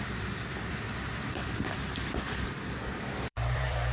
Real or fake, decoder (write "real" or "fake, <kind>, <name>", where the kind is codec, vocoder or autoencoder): fake, vocoder, BigVGAN v2